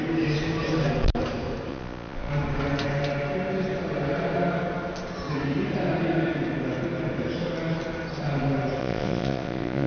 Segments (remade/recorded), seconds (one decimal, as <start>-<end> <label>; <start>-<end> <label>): 0.0-1.7 recorded; 1.7-2.3 remade; 2.3-8.8 recorded; 8.8-9.9 remade